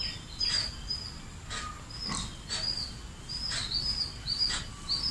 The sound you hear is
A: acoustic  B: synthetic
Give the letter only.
A